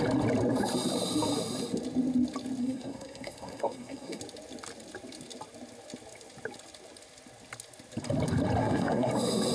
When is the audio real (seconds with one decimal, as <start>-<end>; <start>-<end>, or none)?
0.0-2.6; 4.2-8.6; 9.1-9.5